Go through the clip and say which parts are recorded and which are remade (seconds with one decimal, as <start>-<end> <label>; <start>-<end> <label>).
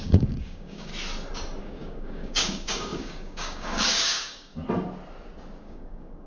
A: 0.0-0.9 remade; 0.9-1.6 recorded; 1.6-4.5 remade; 4.5-5.6 recorded; 5.6-6.3 remade